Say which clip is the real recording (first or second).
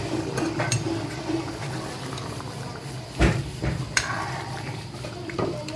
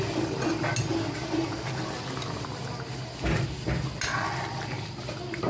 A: second